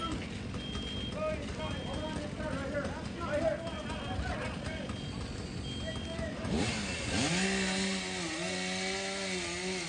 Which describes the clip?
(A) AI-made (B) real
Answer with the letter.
B